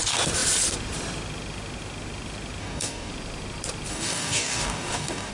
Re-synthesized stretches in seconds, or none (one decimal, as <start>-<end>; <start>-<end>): 2.6-3.1; 3.9-5.3